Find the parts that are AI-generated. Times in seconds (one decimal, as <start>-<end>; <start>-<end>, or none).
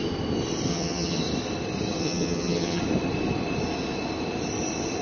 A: 0.7-1.2; 2.0-2.8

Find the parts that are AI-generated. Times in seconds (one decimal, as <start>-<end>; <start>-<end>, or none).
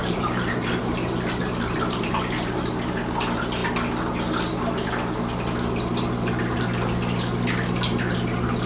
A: 0.0-2.7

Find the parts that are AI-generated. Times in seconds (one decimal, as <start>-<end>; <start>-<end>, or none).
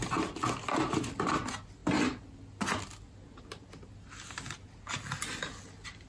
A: none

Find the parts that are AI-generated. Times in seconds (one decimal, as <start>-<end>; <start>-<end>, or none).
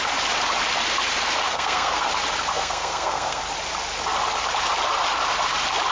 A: 1.5-2.1; 2.5-3.4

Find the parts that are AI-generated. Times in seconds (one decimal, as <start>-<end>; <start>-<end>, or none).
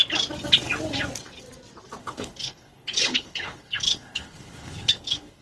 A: 2.0-5.4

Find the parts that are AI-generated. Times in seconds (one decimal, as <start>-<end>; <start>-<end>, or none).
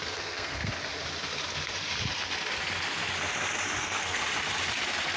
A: 0.0-0.7; 3.8-4.2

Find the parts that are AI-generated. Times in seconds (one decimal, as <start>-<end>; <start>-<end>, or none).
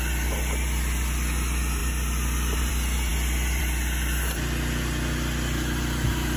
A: none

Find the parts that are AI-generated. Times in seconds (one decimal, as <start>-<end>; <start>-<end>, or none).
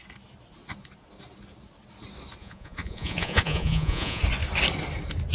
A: 2.4-4.2